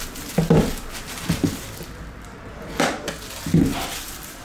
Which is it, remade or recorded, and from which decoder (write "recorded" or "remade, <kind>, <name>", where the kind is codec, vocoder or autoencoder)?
recorded